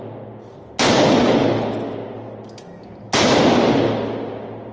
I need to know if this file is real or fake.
real